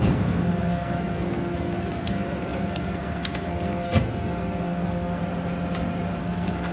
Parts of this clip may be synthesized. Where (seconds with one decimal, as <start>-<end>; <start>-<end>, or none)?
0.0-5.2; 6.2-6.7

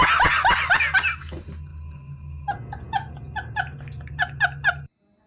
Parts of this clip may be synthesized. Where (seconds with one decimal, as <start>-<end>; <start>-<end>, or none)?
none

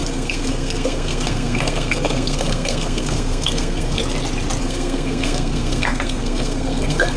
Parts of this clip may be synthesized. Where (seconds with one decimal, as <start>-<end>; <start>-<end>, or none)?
0.0-4.0; 4.6-7.2

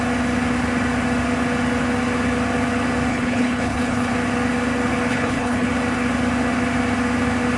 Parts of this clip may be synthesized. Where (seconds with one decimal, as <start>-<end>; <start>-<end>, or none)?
3.1-4.1; 5.1-5.7

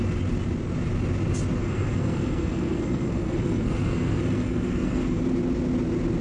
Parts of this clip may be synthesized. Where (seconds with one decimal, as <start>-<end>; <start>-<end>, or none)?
1.6-5.2

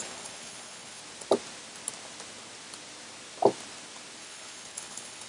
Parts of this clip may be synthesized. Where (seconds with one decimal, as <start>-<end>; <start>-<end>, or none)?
0.0-1.0; 4.2-5.3